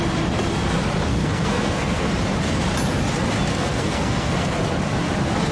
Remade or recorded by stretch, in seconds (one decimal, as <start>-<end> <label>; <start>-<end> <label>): 0.0-1.1 recorded; 1.1-2.1 remade; 2.1-3.5 recorded; 3.5-4.5 remade; 4.5-5.5 recorded